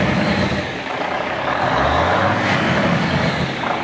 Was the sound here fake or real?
fake